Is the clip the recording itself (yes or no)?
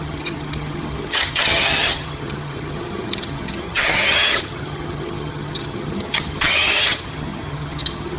no